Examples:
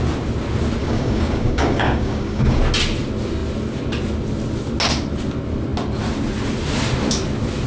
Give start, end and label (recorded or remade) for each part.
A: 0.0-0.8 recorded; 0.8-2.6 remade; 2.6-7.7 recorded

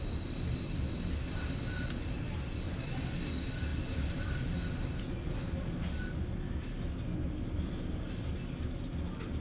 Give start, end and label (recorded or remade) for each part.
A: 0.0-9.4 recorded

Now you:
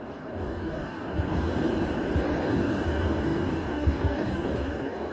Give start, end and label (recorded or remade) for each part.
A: 0.0-1.7 remade; 1.7-2.2 recorded; 2.2-5.1 remade

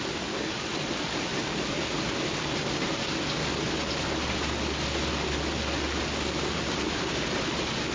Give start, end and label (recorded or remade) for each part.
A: 0.0-7.9 recorded

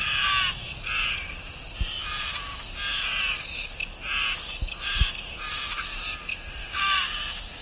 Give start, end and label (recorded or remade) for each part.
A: 0.0-6.6 recorded; 6.6-7.6 remade

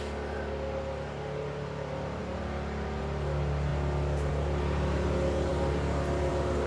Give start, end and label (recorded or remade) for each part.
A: 0.0-6.7 recorded

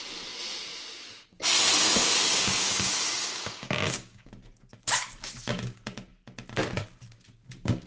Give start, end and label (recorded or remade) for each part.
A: 0.0-2.2 recorded; 2.2-4.3 remade; 4.3-7.9 recorded

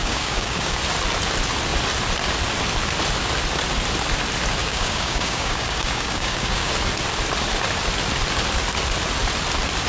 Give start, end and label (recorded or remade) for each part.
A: 0.0-0.8 remade; 0.8-4.6 recorded; 4.6-6.7 remade; 6.7-9.9 recorded